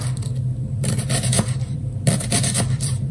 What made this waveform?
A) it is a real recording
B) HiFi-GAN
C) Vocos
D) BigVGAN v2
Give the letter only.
D